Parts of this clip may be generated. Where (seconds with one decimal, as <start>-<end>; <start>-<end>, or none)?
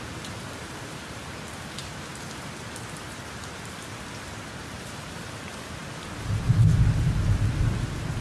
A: 0.0-2.1; 4.6-5.8